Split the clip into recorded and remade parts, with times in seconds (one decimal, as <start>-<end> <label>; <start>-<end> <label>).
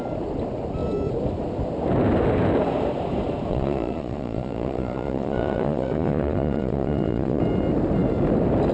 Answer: 0.0-3.5 recorded; 3.5-7.4 remade; 7.4-8.7 recorded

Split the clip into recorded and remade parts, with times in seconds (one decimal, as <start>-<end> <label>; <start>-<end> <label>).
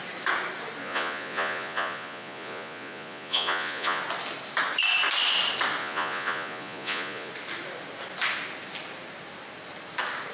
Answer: 0.0-0.8 recorded; 0.8-4.0 remade; 4.0-5.8 recorded; 5.8-7.3 remade; 7.3-10.3 recorded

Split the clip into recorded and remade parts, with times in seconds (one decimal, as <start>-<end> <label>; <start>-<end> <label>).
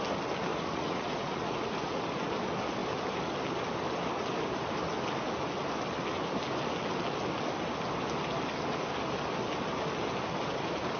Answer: 0.0-0.5 recorded; 0.5-2.0 remade; 2.0-11.0 recorded